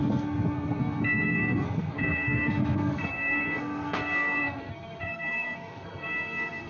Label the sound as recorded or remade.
remade